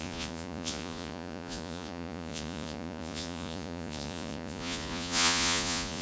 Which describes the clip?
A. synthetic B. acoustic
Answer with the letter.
A